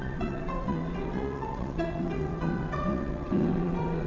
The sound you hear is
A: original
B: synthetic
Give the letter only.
B